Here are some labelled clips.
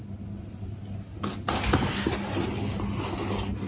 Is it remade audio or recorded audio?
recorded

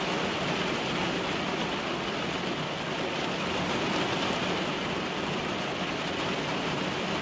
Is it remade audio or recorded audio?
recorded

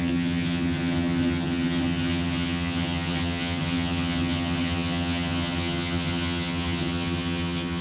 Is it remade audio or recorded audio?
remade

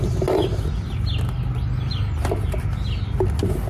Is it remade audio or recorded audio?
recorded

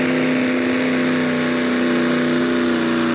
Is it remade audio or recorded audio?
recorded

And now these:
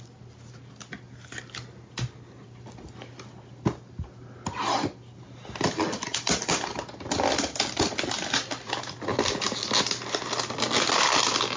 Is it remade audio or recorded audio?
recorded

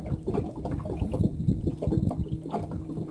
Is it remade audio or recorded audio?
recorded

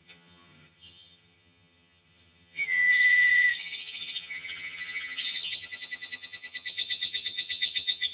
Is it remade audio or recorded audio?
remade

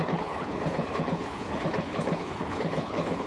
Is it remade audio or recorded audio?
remade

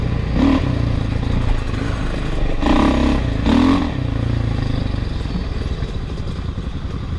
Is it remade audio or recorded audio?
recorded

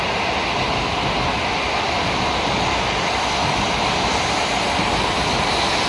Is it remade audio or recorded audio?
recorded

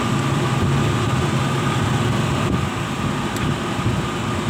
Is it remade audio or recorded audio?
recorded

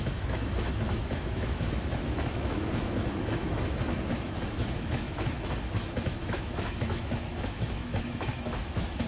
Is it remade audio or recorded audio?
remade